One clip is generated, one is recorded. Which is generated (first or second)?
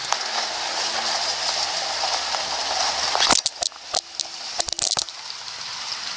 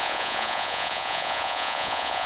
second